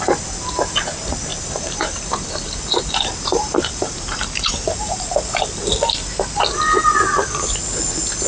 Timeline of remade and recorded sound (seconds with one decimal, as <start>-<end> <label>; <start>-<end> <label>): 0.0-1.3 recorded; 1.3-5.9 remade; 5.9-8.3 recorded